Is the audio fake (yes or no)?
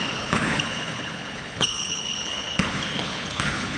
yes